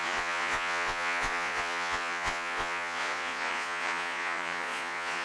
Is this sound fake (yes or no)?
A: yes